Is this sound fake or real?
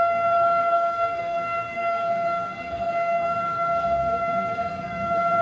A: fake